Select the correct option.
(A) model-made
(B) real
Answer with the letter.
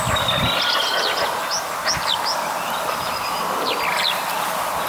B